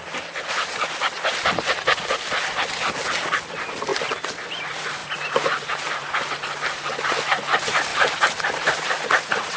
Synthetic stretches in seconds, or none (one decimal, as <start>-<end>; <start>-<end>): 7.9-9.6